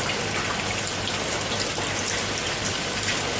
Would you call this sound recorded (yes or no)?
yes